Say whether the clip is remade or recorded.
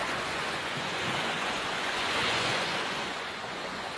remade